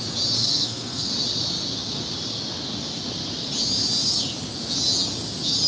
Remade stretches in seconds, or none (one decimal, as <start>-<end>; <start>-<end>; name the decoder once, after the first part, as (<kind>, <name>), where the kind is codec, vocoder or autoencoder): 0.4-1.1 (codec, SNAC)